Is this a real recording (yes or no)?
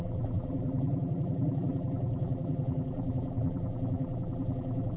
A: no